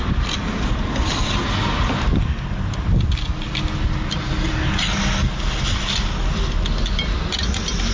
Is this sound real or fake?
real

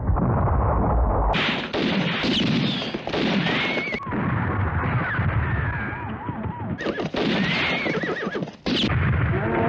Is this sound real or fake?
real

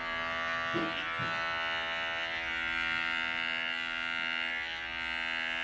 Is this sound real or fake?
real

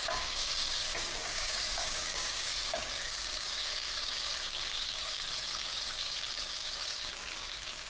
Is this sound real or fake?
fake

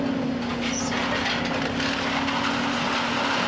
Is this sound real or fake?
real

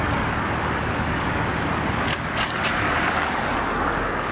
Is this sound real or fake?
fake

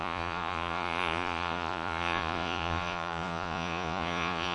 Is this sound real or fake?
fake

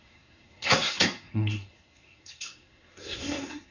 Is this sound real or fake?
fake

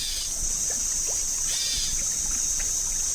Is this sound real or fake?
real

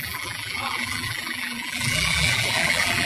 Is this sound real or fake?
fake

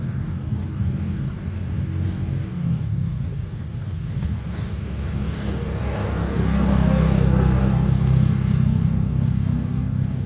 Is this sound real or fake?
fake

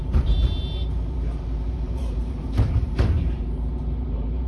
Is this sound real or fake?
fake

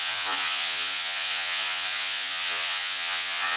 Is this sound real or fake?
fake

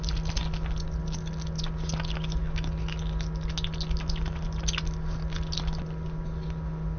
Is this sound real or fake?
real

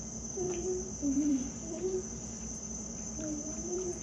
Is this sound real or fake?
fake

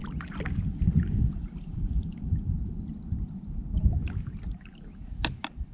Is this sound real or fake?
real